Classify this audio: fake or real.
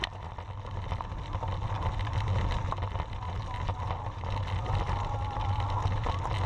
real